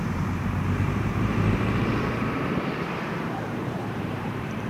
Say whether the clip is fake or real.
fake